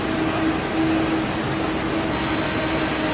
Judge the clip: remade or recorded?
recorded